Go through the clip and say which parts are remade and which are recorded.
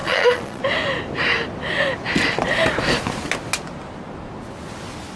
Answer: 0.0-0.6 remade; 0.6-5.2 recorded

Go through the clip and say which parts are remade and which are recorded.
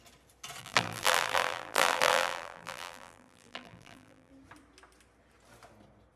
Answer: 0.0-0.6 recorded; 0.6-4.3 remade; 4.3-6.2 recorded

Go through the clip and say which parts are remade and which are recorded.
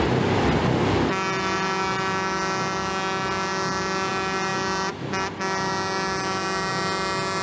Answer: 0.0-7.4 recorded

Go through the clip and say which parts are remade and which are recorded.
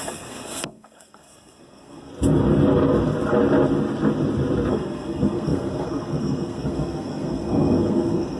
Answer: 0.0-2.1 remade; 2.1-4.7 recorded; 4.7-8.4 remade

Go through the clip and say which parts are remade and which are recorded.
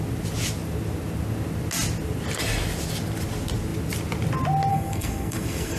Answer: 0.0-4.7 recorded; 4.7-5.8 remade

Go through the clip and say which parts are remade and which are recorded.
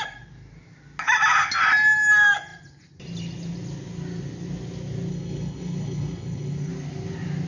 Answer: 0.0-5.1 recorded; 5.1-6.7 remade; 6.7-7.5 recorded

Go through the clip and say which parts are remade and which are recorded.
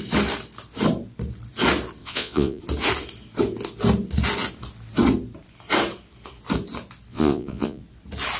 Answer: 0.0-2.0 recorded; 2.0-2.6 remade; 2.6-7.1 recorded; 7.1-7.8 remade; 7.8-8.4 recorded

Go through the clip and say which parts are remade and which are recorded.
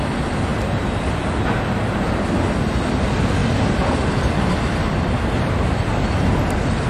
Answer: 0.0-6.9 recorded